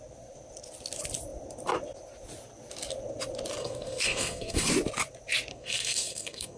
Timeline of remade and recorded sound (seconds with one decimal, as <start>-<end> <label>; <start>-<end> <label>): 0.0-3.6 recorded; 3.6-4.7 remade; 4.7-5.5 recorded; 5.5-6.6 remade